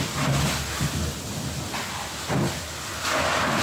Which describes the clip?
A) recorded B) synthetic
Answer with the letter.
A